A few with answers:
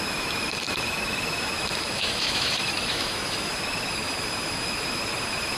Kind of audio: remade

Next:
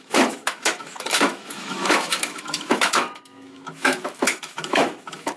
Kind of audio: remade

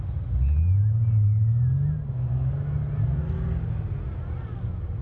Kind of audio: recorded